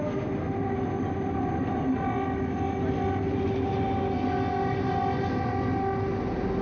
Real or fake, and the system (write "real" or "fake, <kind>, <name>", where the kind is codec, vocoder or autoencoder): real